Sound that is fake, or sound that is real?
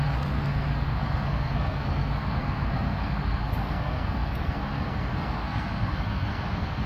fake